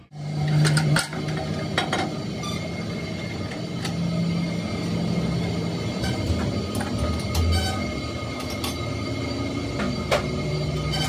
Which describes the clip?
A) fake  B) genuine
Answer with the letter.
B